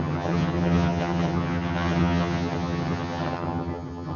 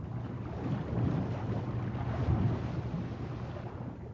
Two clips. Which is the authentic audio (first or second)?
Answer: second